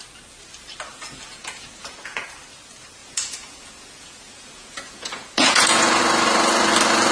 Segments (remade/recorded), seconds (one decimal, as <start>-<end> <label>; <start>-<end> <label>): 0.0-0.9 recorded; 0.9-2.2 remade; 2.2-3.0 recorded; 3.0-6.0 remade; 6.0-7.1 recorded